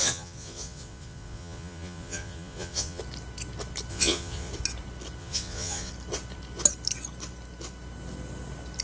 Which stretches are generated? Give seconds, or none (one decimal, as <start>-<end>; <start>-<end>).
0.0-3.0; 3.9-4.5; 5.2-5.9